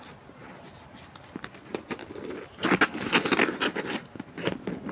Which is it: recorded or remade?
recorded